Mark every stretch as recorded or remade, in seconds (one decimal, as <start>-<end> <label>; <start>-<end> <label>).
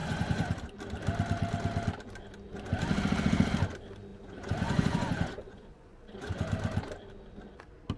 0.0-0.6 remade; 0.6-4.1 recorded; 4.1-6.4 remade; 6.4-8.0 recorded